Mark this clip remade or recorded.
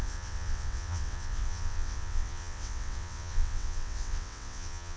remade